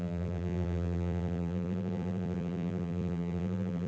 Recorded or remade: remade